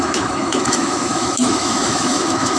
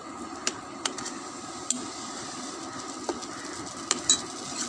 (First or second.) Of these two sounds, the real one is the second